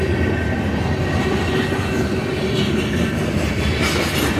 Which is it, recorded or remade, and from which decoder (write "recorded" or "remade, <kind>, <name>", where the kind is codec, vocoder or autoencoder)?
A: recorded